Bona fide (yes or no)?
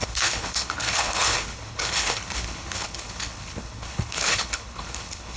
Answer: no